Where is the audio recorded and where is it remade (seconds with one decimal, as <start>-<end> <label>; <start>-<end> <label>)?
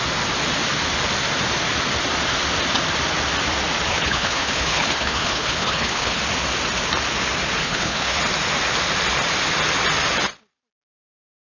0.0-3.9 recorded; 3.9-6.2 remade; 6.2-7.6 recorded; 7.6-8.2 remade; 8.2-11.4 recorded